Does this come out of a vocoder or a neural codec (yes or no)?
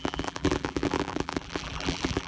yes